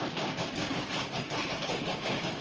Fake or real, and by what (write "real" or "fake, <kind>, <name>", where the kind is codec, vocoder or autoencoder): fake, codec, DAC